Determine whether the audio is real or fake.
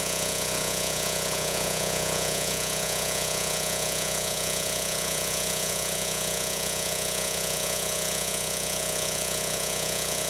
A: fake